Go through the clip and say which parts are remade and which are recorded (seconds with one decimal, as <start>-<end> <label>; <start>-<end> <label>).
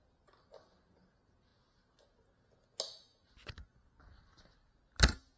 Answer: 0.0-5.4 recorded